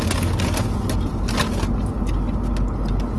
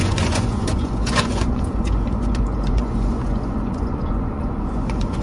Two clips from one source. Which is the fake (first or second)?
second